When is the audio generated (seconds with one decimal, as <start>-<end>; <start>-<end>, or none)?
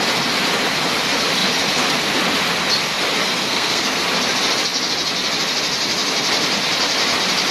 3.2-4.0